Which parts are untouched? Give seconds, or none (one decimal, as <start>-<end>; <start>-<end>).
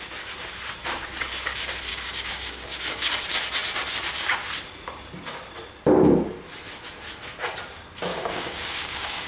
0.0-1.9; 3.1-8.1